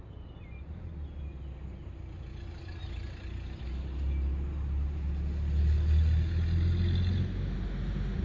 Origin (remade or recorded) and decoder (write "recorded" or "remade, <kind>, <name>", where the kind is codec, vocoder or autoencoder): recorded